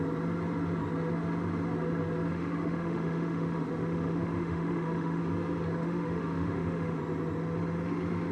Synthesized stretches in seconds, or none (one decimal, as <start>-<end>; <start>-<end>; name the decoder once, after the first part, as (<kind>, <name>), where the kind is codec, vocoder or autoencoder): 2.3-5.2 (autoencoder, DAC-VAE); 5.8-7.0